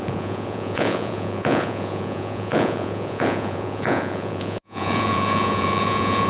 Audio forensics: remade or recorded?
remade